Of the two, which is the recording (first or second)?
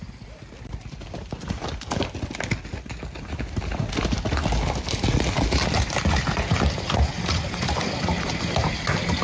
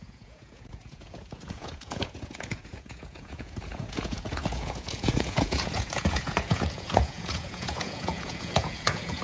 first